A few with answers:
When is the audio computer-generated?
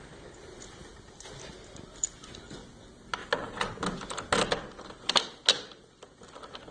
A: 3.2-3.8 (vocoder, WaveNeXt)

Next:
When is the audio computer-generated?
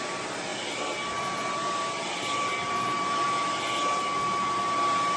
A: none